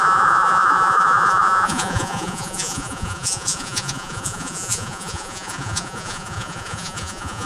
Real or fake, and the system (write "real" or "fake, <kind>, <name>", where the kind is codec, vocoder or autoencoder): fake, vocoder, Vocos